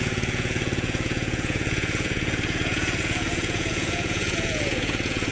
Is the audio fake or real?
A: fake